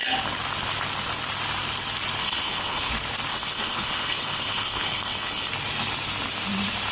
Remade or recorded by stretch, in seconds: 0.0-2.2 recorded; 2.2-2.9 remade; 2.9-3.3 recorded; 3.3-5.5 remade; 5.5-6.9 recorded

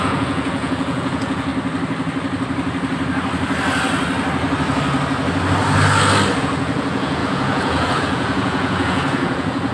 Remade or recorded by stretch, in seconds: 0.0-1.5 remade; 1.5-6.4 recorded; 6.4-9.7 remade